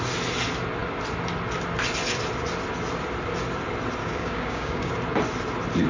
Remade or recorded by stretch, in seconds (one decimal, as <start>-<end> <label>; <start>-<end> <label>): 0.0-4.0 recorded; 4.0-4.9 remade; 4.9-5.9 recorded